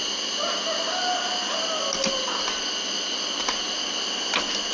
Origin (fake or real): real